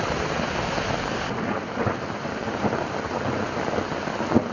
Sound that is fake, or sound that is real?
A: real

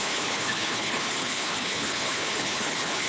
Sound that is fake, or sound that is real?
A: fake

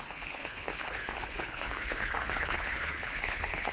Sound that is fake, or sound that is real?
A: fake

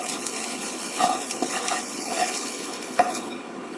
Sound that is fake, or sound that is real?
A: fake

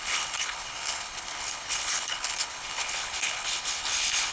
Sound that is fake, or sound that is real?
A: fake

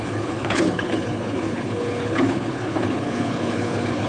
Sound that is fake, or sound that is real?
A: fake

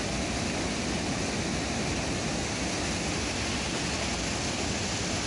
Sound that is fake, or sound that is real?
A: real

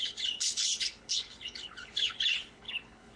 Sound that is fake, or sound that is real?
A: fake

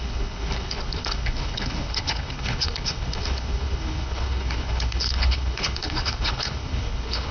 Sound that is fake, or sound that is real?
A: fake